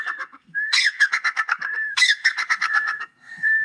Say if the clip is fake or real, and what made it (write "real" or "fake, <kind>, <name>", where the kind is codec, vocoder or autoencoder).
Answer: fake, codec, SNAC